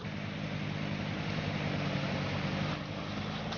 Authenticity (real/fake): real